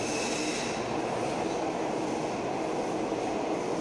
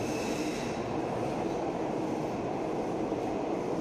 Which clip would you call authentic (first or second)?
first